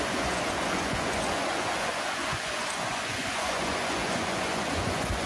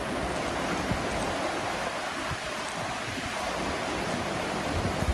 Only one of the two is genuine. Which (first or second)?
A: second